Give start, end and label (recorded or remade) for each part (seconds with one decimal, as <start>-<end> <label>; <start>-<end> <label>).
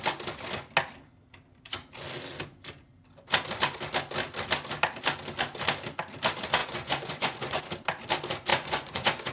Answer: 0.0-6.6 recorded; 6.6-7.6 remade; 7.6-8.5 recorded; 8.5-9.3 remade